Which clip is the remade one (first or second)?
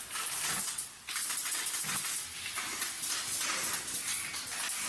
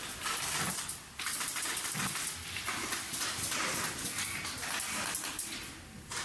second